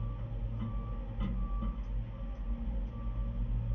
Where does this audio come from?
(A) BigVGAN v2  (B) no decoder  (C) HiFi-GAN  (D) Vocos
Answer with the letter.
B